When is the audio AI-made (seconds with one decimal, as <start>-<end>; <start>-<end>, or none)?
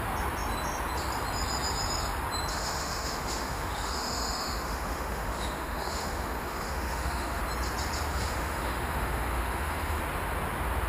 2.5-7.4; 8.1-10.0